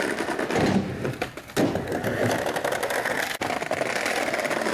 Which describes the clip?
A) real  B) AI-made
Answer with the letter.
A